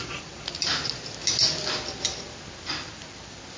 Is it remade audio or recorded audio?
recorded